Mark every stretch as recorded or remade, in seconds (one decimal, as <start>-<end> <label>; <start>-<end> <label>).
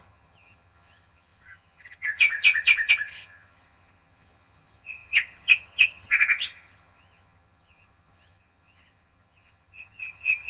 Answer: 0.0-10.5 remade